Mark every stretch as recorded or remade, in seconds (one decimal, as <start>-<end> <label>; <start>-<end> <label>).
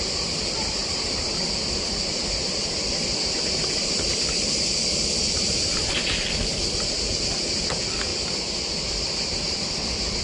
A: 0.0-4.1 recorded; 4.1-5.9 remade; 5.9-8.1 recorded; 8.1-9.7 remade; 9.7-10.2 recorded